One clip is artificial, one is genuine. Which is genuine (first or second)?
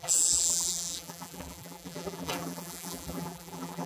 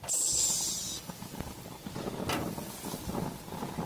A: second